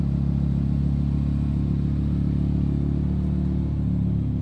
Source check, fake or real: real